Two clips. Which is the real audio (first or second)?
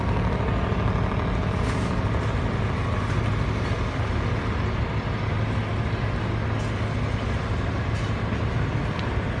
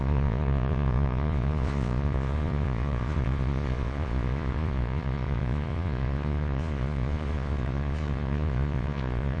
first